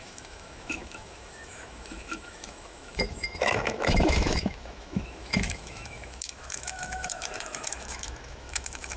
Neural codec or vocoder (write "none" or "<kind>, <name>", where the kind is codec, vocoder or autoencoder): autoencoder, DAC-VAE